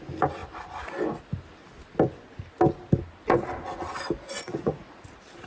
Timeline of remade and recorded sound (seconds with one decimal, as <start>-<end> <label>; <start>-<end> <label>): 0.0-4.5 recorded; 4.5-5.0 remade; 5.0-5.5 recorded